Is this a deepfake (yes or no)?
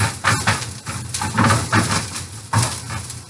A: no